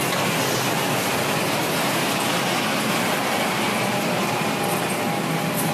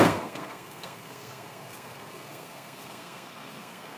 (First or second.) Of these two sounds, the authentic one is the first